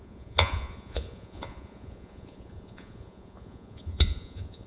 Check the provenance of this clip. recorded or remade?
remade